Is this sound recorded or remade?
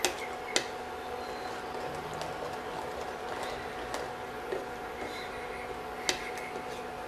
recorded